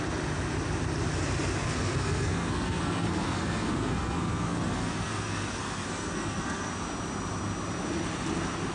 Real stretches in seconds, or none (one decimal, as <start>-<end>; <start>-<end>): 0.0-1.6; 6.7-8.7